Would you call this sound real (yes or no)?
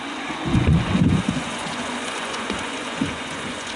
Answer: no